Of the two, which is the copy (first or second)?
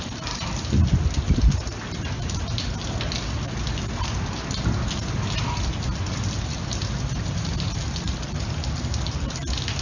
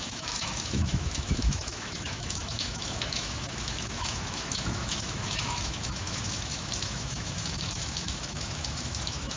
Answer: second